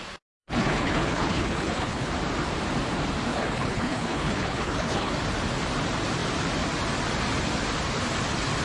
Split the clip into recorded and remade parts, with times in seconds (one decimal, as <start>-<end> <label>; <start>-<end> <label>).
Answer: 0.0-0.4 recorded; 0.4-2.1 remade; 2.1-3.3 recorded; 3.3-5.1 remade; 5.1-8.6 recorded